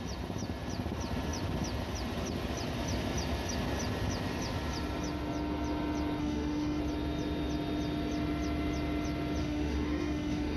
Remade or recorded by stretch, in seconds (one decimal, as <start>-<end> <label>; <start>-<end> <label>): 0.0-6.2 recorded; 6.2-6.8 remade; 6.8-9.4 recorded; 9.4-10.6 remade